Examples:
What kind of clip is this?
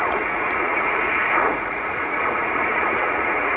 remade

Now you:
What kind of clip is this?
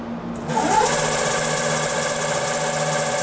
recorded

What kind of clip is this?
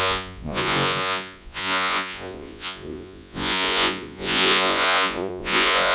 remade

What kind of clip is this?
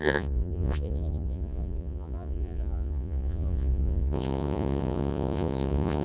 remade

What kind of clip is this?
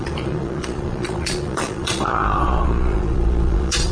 remade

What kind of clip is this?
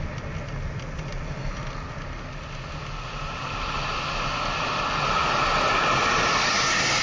recorded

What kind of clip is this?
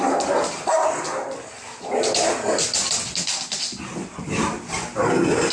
recorded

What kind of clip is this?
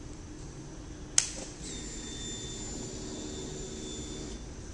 recorded